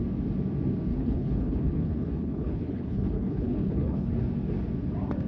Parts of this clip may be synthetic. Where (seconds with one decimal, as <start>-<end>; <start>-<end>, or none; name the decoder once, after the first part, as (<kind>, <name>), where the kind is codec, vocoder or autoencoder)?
0.9-4.1 (codec, HILCodec)